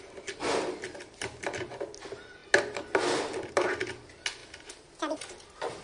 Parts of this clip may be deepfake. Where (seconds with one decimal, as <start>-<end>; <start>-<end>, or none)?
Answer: none